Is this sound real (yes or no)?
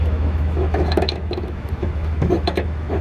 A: no